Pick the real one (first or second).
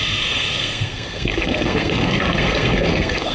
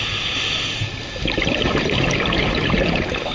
second